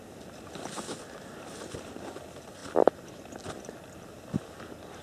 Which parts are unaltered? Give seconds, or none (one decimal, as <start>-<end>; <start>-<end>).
0.0-5.0